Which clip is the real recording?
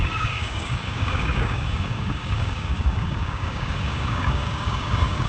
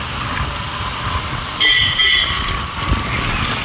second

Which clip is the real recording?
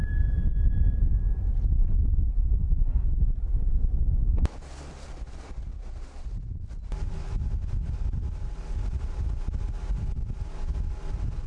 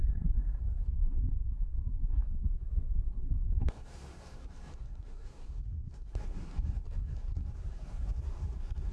first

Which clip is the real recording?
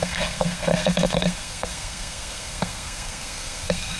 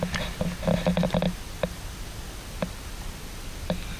second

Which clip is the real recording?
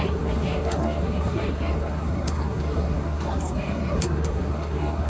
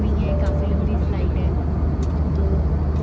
second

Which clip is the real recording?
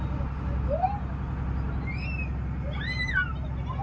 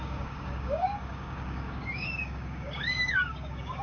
first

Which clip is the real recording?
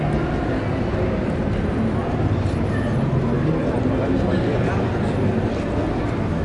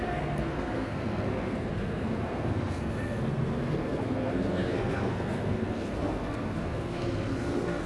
first